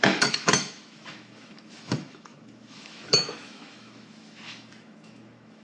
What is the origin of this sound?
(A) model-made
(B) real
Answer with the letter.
A